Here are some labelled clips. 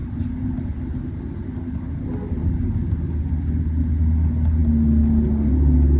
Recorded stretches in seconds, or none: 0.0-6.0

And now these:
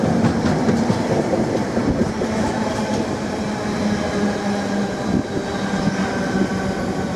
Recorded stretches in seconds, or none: 0.0-0.6; 3.0-7.2

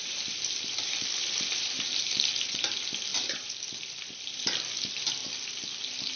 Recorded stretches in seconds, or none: 2.0-3.1; 4.4-6.2

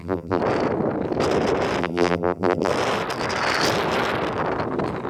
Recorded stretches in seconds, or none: 0.4-1.8; 2.7-5.1

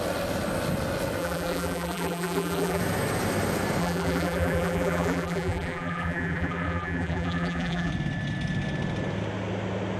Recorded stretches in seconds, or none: 0.0-1.2; 2.8-3.8; 7.9-10.0